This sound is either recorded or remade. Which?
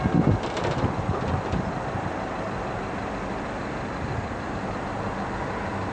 recorded